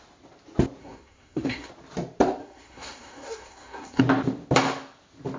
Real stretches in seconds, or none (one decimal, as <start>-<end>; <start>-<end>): 0.0-0.8; 1.7-2.4; 4.0-5.4